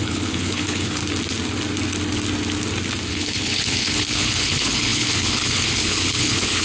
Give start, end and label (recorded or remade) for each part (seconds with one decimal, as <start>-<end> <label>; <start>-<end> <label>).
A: 0.0-1.0 remade; 1.0-3.1 recorded; 3.1-6.6 remade